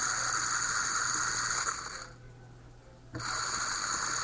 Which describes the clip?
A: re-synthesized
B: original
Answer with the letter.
B